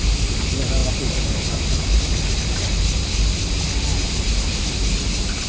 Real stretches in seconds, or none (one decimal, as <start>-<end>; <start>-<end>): 0.0-5.5